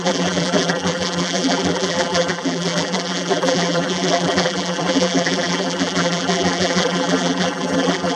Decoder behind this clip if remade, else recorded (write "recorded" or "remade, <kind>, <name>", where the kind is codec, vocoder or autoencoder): remade, vocoder, BigVGAN v2